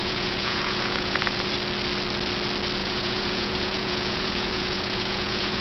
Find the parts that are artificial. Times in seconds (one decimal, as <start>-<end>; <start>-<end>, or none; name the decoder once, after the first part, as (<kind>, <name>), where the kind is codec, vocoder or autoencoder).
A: 0.0-1.5 (vocoder, Vocos); 2.8-5.6